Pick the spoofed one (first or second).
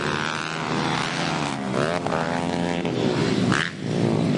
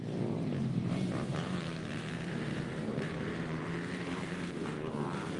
second